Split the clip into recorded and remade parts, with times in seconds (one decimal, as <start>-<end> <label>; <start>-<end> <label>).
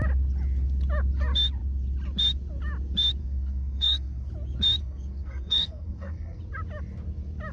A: 0.0-3.2 recorded; 3.2-4.3 remade; 4.3-4.8 recorded; 4.8-6.4 remade; 6.4-7.5 recorded